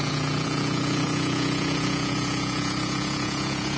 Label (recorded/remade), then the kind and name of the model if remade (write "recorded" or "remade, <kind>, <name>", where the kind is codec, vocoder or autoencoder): remade, vocoder, Vocos